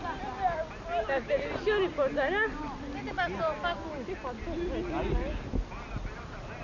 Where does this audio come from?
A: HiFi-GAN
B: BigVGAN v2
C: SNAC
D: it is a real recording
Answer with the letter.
D